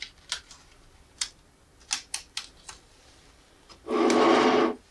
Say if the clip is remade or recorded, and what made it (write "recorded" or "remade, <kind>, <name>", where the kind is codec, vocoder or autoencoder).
recorded